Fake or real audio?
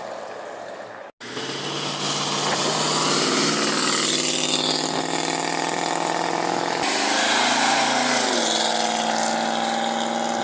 real